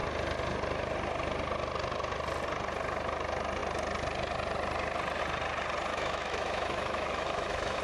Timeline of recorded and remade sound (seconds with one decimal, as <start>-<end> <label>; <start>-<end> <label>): 0.0-5.9 recorded; 5.9-7.8 remade